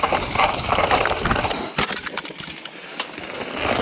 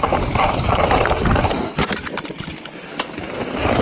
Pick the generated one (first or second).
second